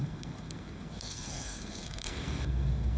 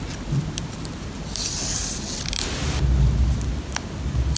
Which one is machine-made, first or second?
first